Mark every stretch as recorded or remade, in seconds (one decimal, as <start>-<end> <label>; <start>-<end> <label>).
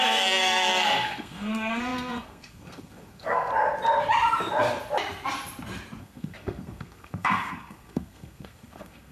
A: 0.0-3.5 remade; 3.5-6.0 recorded; 6.0-9.1 remade